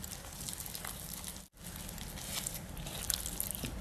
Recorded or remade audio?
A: recorded